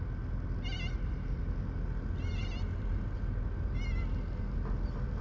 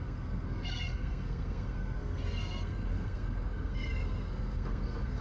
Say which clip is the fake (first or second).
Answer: second